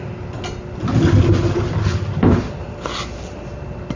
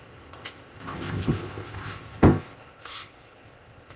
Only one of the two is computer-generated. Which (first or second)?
second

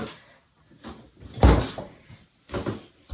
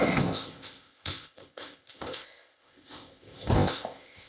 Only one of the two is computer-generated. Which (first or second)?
second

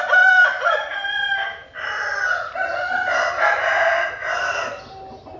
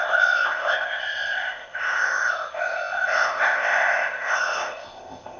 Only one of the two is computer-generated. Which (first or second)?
second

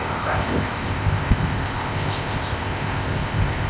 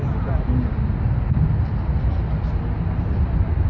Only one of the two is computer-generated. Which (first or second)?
first